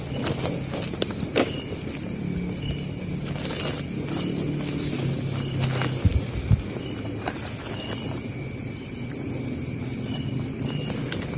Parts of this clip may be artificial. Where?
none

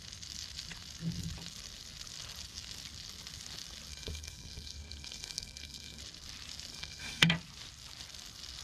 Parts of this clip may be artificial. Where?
3.9-6.0 (codec, SNAC); 6.7-7.3

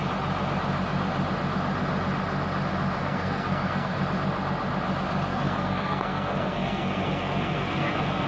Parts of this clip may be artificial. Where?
3.0-4.0 (codec, SNAC); 5.3-8.3

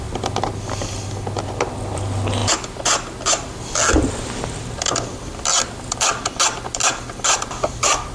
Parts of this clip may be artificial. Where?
none

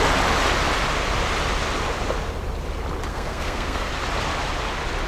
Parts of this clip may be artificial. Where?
3.1-3.9 (codec, SNAC)

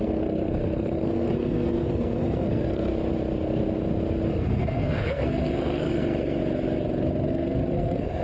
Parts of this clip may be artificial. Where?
0.0-2.9 (codec, SNAC); 4.3-6.4; 7.3-8.2

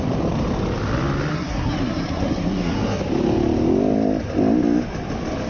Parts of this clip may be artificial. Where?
1.3-3.0 (codec, SNAC)

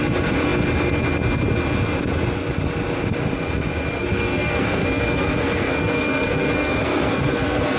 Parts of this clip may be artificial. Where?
4.0-7.8 (codec, SNAC)